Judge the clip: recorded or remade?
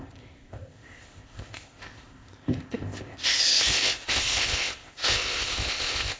remade